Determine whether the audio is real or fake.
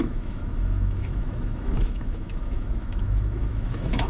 fake